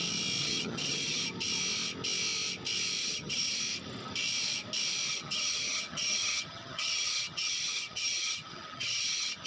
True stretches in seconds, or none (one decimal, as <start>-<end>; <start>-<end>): 0.0-0.4; 1.2-3.0; 3.6-5.1